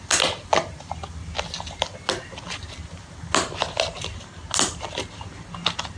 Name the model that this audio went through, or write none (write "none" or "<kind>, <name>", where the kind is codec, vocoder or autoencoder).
none